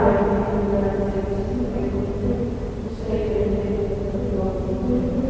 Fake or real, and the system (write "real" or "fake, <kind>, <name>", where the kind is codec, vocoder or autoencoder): real